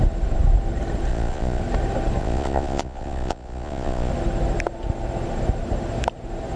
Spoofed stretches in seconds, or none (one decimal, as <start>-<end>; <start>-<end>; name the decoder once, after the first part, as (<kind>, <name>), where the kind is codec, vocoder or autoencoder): 1.1-1.6 (vocoder, Vocos); 2.2-4.1